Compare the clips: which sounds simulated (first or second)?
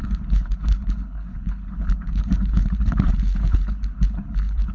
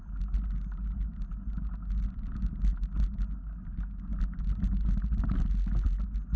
first